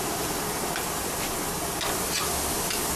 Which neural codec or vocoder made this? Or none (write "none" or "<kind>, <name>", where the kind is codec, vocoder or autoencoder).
none